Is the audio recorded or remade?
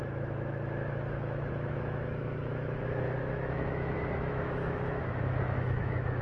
remade